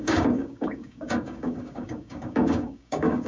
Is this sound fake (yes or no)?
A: yes